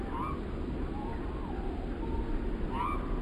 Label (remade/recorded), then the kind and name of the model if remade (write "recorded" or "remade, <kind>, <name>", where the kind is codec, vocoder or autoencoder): recorded